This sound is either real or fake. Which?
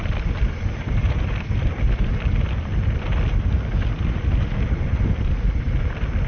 real